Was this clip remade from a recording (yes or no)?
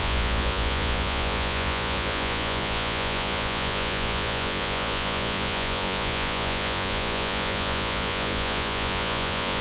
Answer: yes